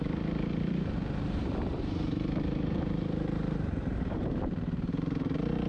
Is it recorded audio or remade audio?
remade